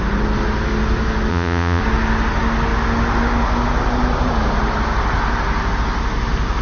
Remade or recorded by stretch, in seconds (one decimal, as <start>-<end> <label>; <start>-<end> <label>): 0.0-1.3 recorded; 1.3-1.8 remade; 1.8-6.6 recorded